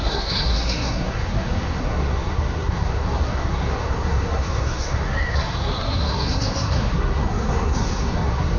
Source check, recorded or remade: remade